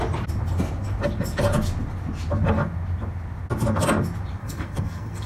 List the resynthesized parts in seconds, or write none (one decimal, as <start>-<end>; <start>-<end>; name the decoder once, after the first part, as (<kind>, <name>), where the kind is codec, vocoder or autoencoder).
4.4-5.3 (codec, SNAC)